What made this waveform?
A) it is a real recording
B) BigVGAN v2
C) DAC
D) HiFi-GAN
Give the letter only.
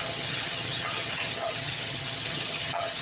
D